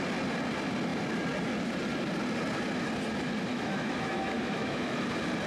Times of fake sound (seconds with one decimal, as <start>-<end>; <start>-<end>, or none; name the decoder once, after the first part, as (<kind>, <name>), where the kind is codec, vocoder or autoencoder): 3.5-5.0 (autoencoder, DAC-VAE)

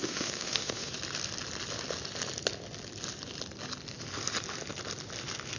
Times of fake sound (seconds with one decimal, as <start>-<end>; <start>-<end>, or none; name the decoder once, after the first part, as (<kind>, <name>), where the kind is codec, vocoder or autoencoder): 0.0-0.9 (autoencoder, DAC-VAE)

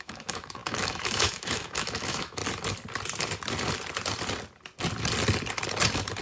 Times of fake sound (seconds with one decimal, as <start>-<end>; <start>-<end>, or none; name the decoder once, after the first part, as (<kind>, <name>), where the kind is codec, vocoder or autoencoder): 0.0-2.4 (autoencoder, DAC-VAE)

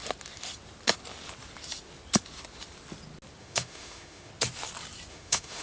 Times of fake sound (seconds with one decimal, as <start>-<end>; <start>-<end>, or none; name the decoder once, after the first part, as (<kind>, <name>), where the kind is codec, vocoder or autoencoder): 3.4-4.3 (autoencoder, DAC-VAE); 5.1-5.6

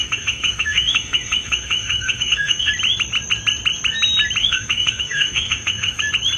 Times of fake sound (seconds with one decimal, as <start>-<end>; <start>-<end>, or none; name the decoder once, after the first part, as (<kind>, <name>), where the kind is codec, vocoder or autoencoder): 0.0-2.7 (autoencoder, DAC-VAE); 4.4-6.0